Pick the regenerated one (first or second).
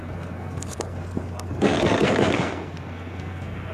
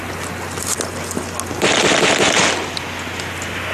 first